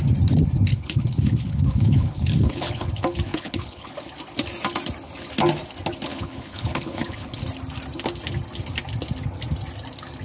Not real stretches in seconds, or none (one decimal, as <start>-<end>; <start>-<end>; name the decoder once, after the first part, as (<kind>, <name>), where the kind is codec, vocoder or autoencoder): 0.7-2.9 (codec, HILCodec); 3.3-3.9; 6.1-7.4